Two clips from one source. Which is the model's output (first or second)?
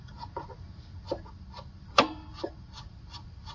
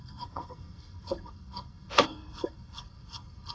second